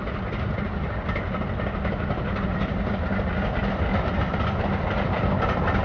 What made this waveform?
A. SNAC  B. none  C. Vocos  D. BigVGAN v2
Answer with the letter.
B